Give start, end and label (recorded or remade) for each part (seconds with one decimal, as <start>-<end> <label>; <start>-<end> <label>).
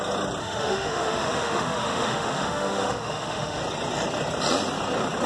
0.0-0.4 recorded; 0.4-3.6 remade; 3.6-5.3 recorded